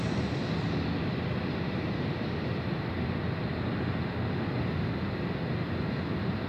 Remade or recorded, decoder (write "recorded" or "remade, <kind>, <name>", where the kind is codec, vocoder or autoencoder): recorded